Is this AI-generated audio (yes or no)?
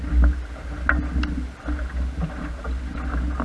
no